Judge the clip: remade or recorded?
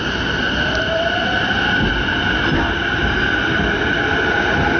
recorded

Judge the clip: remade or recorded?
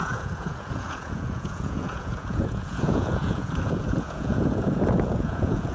remade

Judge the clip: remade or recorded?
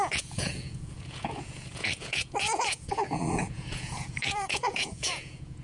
remade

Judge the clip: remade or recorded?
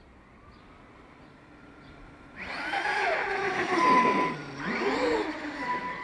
recorded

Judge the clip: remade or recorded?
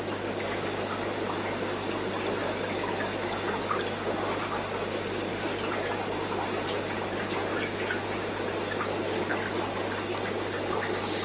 recorded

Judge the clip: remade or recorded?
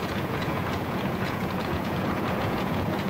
remade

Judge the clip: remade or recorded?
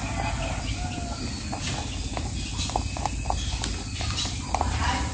recorded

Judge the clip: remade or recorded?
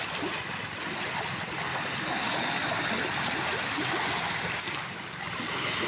recorded